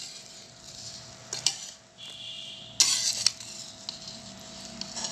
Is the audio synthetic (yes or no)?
no